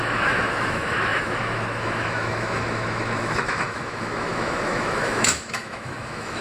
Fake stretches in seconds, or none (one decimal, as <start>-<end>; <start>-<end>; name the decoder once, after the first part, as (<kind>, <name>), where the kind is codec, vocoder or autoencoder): 0.0-6.4 (autoencoder, DAC-VAE)